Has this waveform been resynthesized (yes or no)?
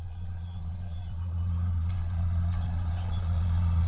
yes